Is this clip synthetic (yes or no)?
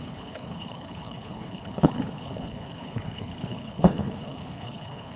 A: yes